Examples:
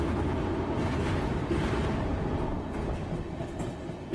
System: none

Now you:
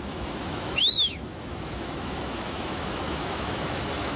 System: autoencoder, DAC-VAE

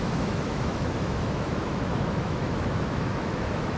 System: autoencoder, DAC-VAE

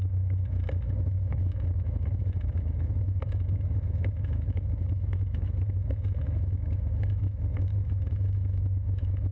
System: autoencoder, DAC-VAE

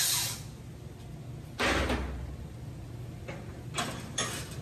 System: none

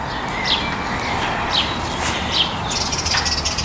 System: none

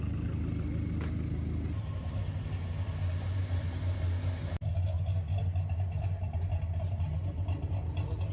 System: none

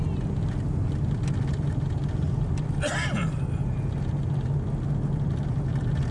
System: none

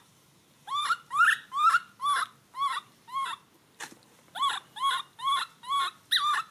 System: none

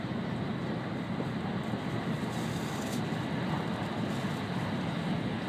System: none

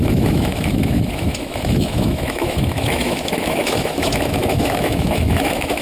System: autoencoder, DAC-VAE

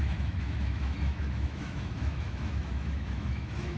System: autoencoder, DAC-VAE